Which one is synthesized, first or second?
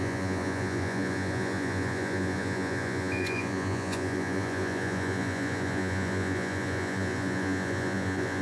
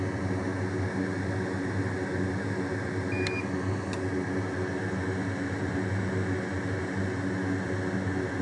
first